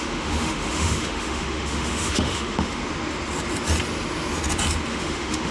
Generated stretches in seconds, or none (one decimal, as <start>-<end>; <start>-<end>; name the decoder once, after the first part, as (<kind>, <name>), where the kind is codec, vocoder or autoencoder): 0.0-2.8 (autoencoder, DAC-VAE); 4.9-5.5